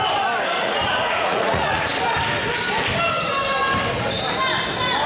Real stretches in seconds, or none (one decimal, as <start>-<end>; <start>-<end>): 0.0-0.6; 1.9-5.1